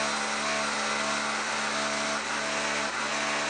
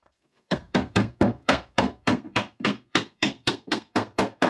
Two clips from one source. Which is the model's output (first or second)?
second